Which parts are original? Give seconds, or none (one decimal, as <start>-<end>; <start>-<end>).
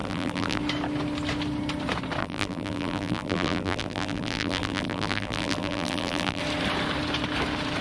0.6-2.2; 6.4-7.8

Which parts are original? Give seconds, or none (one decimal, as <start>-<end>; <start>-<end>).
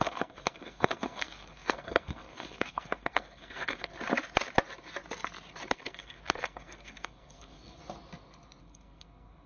3.9-5.7; 7.8-8.6